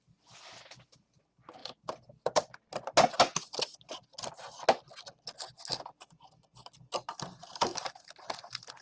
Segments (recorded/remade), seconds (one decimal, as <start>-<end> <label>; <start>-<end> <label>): 0.0-8.8 recorded